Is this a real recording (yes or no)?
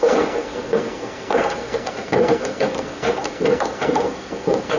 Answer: no